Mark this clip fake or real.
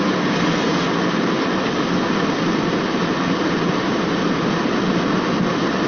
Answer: real